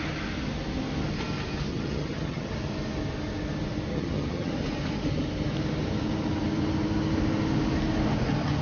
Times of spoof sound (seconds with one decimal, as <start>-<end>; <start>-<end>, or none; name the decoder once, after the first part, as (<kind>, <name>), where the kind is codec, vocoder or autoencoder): 1.7-2.5 (vocoder, HiFi-GAN); 3.9-4.5